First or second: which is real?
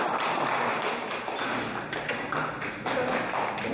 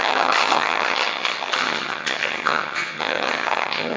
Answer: first